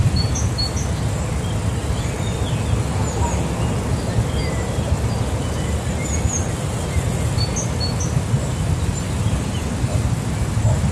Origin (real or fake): real